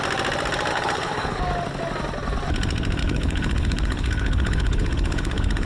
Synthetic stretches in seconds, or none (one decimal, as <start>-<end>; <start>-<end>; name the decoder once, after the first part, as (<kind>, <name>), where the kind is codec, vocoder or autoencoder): 0.7-1.4 (codec, HILCodec); 3.0-5.7